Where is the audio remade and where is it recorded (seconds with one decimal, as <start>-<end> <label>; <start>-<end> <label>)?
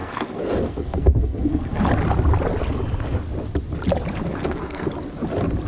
0.0-1.8 remade; 1.8-4.3 recorded; 4.3-4.9 remade; 4.9-5.7 recorded